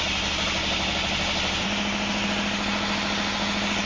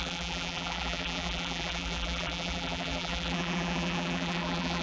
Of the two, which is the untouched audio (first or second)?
first